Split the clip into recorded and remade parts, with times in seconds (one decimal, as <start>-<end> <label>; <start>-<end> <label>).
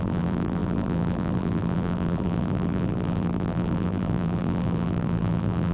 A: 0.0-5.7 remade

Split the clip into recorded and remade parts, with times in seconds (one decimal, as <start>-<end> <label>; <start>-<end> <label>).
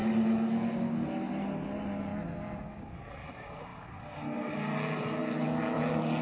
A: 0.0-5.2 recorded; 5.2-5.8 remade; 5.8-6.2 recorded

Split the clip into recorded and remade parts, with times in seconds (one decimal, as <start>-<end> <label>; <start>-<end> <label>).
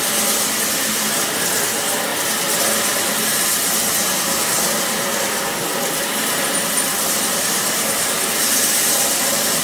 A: 0.0-9.6 recorded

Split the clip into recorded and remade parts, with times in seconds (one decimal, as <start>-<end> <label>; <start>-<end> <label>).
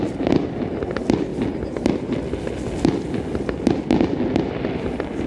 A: 0.0-5.3 recorded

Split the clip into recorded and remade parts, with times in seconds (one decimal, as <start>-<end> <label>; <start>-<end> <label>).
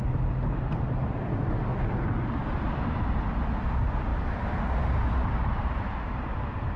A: 0.0-4.1 recorded; 4.1-6.3 remade; 6.3-6.8 recorded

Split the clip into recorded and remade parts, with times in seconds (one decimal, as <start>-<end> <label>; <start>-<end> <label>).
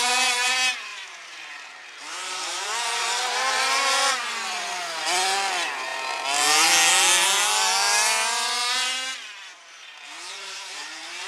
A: 0.0-0.9 recorded; 0.9-4.1 remade; 4.1-8.9 recorded; 8.9-11.3 remade